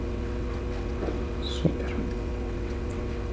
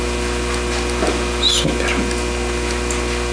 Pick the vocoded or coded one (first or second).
first